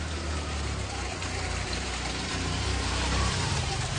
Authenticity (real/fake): fake